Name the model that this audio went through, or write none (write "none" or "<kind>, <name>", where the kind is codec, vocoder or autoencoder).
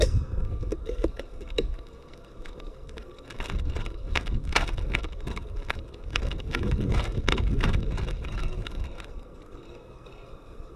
codec, SNAC